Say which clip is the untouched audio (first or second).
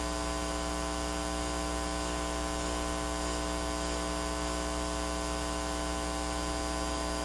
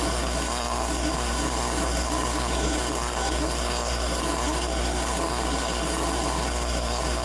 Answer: first